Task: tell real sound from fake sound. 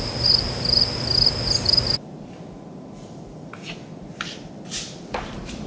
real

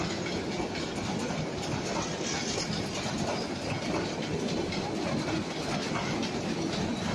real